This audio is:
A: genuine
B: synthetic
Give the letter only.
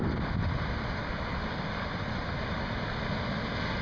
A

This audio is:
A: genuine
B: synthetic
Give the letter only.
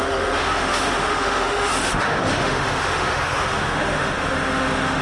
B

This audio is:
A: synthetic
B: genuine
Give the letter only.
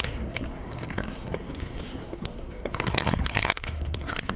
A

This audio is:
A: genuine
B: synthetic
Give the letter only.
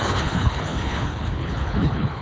B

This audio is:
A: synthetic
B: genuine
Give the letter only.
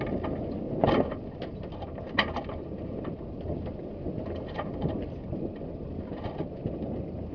B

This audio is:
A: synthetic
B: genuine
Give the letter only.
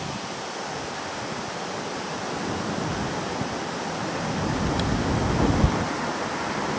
B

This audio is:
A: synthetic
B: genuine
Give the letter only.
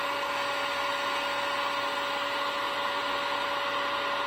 B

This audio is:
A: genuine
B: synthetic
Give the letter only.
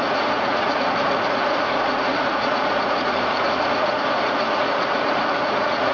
B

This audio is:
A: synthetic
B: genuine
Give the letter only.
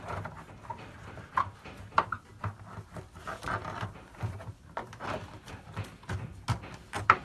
B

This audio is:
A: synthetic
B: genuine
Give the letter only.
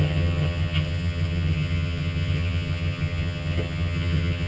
A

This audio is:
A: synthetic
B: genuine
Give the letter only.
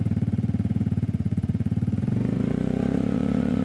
A